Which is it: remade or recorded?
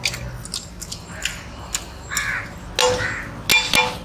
recorded